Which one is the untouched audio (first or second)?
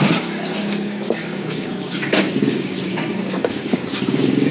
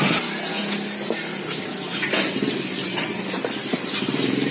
second